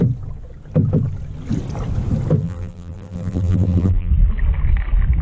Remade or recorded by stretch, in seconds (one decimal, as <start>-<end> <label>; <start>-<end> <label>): 0.0-2.4 recorded; 2.4-4.1 remade; 4.1-5.2 recorded